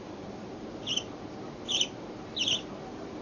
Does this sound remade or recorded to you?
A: recorded